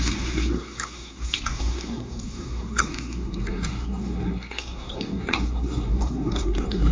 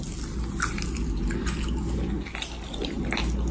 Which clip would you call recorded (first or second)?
second